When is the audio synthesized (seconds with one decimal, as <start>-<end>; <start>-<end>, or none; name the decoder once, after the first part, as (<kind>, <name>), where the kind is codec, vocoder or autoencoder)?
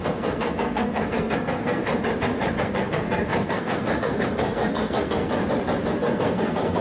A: 0.0-1.8 (codec, SNAC); 2.6-5.4; 5.9-6.8